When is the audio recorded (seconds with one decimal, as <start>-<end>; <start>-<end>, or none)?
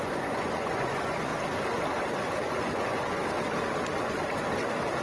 1.3-2.4; 3.2-5.0